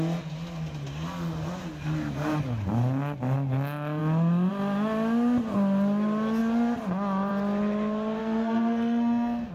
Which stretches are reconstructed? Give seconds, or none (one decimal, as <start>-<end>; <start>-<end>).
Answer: 8.2-9.5